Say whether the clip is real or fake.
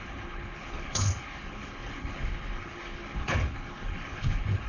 fake